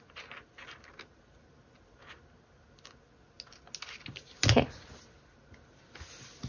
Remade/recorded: recorded